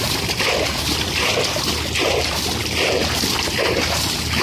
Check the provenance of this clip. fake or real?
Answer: real